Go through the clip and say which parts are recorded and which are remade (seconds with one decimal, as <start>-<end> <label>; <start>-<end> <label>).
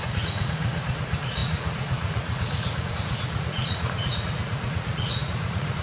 0.0-5.8 remade